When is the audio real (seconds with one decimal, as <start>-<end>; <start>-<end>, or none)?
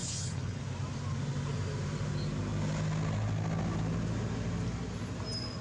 0.6-5.6